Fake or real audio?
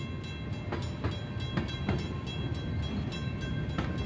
real